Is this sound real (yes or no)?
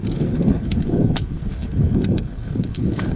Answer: no